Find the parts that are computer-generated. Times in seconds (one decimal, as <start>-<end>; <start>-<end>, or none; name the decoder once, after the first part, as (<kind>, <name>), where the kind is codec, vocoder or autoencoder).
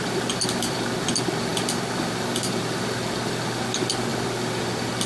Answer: none